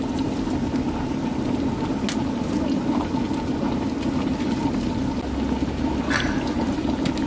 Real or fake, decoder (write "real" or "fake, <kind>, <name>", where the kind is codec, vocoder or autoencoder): real